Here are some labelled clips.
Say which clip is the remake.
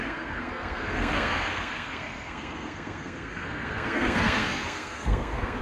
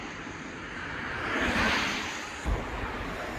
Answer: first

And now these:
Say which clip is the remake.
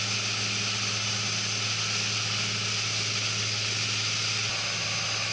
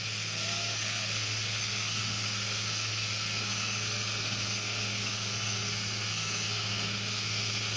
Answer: second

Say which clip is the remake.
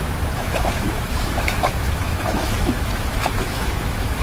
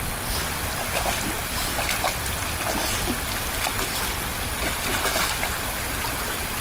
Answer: first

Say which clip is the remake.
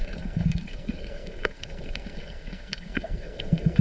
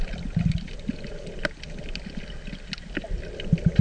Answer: first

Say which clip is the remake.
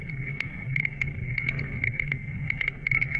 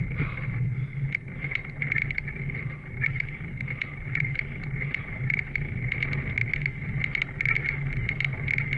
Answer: first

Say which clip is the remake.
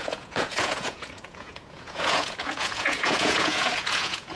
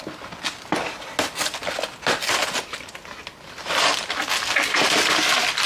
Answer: first